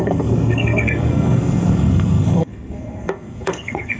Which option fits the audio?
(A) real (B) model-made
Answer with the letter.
B